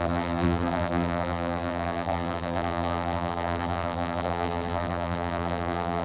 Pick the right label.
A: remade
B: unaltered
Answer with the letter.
A